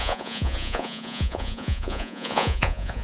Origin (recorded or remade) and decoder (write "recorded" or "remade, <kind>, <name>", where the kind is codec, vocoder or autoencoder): remade, vocoder, Vocos